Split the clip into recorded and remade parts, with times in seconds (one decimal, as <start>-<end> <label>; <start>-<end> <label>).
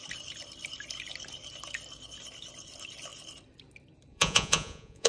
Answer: 0.0-4.1 recorded; 4.1-5.1 remade